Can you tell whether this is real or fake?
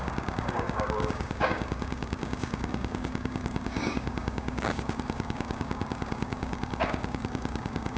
fake